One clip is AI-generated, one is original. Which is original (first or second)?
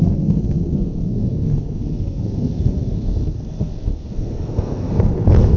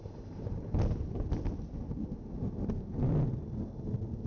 second